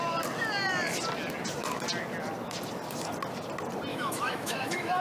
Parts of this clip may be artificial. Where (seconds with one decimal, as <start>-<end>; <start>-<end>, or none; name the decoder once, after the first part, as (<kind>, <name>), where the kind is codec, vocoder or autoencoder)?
3.9-5.0 (autoencoder, DAC-VAE)